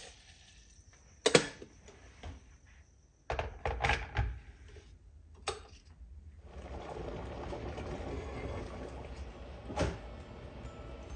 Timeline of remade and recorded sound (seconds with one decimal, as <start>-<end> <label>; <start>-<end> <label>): 0.0-8.1 recorded; 8.1-8.6 remade; 8.6-11.2 recorded